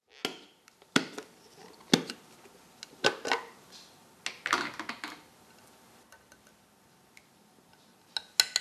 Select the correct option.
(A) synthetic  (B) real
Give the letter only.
B